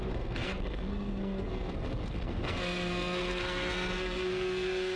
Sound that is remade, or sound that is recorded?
remade